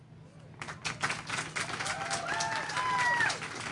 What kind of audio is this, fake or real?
real